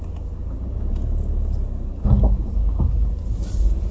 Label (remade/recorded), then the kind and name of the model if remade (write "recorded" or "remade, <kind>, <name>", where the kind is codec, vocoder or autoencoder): recorded